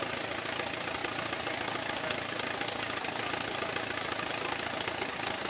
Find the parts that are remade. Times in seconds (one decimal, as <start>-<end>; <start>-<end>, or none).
none